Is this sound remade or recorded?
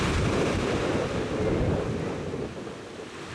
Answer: recorded